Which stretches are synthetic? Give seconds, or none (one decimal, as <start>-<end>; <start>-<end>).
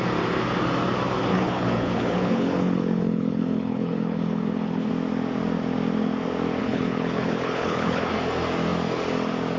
1.3-4.9; 6.6-8.1